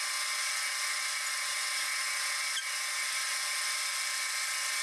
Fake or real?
real